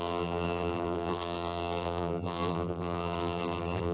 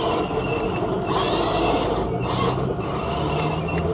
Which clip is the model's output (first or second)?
first